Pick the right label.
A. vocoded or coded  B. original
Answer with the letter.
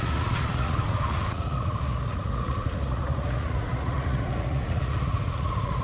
A